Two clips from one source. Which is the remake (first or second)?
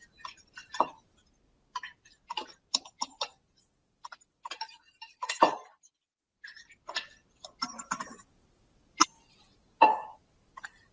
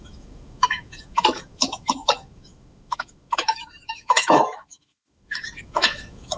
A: second